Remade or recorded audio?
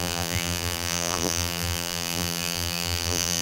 remade